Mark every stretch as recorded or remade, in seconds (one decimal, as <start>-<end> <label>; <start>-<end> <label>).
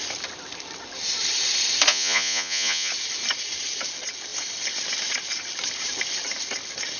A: 0.0-1.9 recorded; 1.9-2.9 remade; 2.9-7.0 recorded